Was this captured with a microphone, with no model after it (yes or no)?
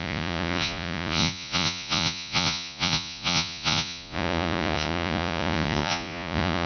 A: no